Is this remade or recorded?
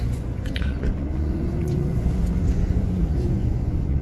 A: remade